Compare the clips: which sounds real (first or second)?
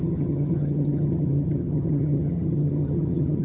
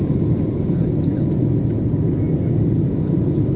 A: second